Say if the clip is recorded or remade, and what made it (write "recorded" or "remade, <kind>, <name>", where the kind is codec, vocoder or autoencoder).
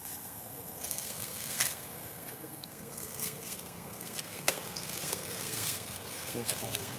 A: remade, codec, SNAC